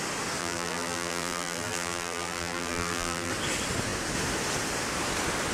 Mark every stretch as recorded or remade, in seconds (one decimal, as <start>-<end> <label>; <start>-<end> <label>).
0.0-0.4 recorded; 0.4-3.3 remade; 3.3-5.5 recorded